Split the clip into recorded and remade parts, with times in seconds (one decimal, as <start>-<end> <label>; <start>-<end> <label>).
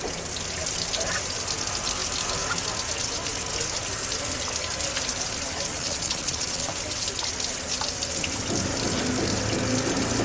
0.0-5.7 recorded; 5.7-6.7 remade; 6.7-10.2 recorded